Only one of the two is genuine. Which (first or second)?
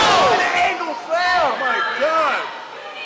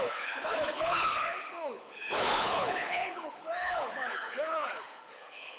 first